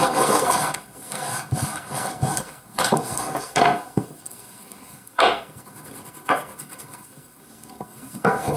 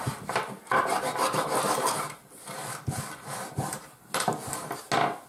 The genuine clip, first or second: second